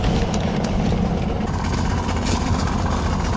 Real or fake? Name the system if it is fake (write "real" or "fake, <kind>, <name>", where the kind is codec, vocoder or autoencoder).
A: real